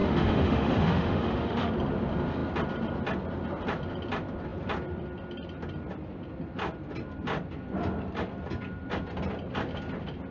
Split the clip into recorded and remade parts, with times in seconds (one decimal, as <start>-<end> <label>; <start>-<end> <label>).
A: 0.0-1.7 remade; 1.7-10.3 recorded